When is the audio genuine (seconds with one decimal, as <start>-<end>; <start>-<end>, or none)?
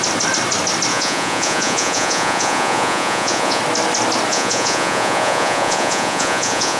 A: 0.0-0.9; 3.6-4.3